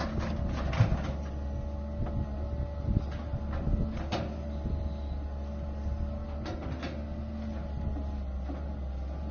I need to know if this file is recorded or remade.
recorded